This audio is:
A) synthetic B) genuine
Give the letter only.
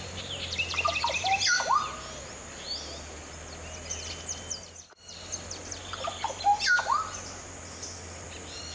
B